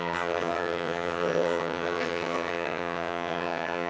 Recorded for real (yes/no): no